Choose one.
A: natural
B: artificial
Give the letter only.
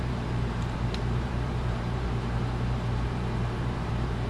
B